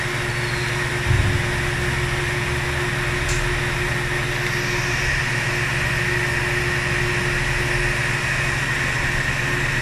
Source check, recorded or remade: recorded